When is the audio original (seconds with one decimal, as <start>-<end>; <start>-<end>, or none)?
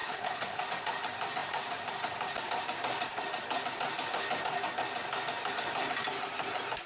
0.6-6.9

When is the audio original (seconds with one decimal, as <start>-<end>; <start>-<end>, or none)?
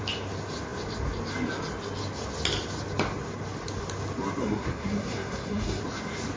0.0-4.4; 5.8-6.4